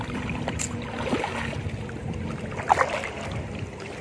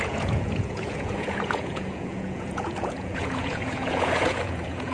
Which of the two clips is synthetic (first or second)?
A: second